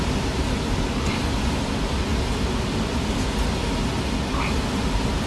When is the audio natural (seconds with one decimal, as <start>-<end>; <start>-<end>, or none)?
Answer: 0.0-5.3